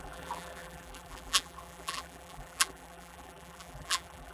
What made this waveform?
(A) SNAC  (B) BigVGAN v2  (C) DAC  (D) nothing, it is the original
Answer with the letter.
B